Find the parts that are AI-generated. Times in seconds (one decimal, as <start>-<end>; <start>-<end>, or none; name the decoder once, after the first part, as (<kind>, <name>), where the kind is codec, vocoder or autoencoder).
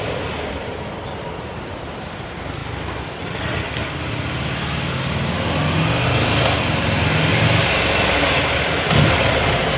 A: none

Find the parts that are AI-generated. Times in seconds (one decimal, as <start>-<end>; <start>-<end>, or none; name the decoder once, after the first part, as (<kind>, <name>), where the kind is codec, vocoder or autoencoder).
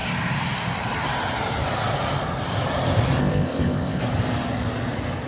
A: 3.2-4.0 (codec, ZipCodec)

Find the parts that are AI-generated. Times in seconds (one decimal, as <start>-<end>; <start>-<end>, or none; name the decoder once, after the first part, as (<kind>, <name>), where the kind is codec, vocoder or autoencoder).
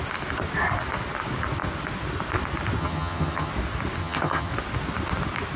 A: 2.8-3.5 (vocoder, HiFi-GAN); 4.0-4.5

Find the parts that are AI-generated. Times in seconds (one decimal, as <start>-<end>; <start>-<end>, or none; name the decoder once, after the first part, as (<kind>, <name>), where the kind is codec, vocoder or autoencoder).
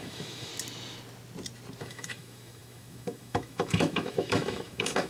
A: 0.0-0.5 (autoencoder, DAC-VAE); 1.8-5.1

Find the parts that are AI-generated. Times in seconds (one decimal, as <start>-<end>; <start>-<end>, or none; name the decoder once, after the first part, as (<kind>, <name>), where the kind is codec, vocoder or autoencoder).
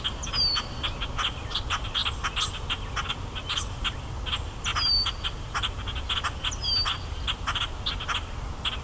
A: none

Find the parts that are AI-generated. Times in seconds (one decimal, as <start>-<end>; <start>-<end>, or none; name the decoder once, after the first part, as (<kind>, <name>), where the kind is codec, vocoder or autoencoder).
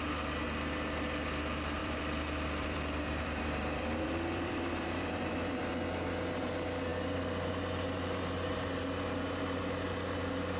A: 1.8-5.7 (vocoder, BigVGAN v2)